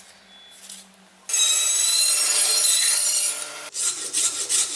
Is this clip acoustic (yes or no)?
yes